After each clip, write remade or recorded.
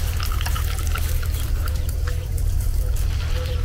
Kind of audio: remade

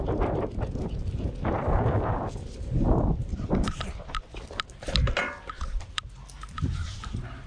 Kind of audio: recorded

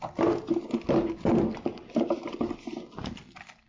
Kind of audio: recorded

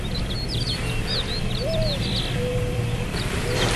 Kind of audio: remade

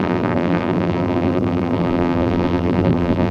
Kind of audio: remade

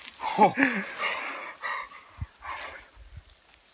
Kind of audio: recorded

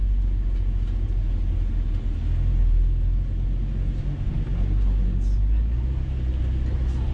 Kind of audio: recorded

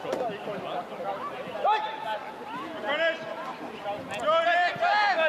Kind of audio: recorded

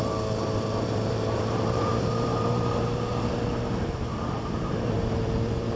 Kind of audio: remade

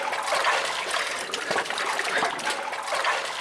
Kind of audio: recorded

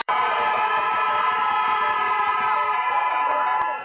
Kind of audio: remade